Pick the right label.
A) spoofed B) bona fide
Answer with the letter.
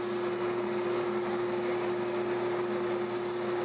B